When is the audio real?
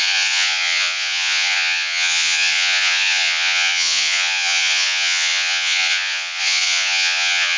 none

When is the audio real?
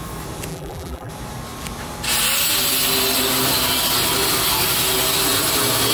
0.0-0.5; 1.1-5.9